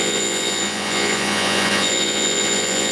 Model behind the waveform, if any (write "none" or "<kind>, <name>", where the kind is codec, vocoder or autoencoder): vocoder, Vocos